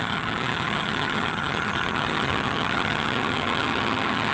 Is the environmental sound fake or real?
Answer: fake